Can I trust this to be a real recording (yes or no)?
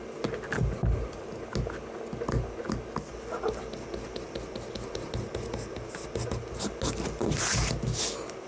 yes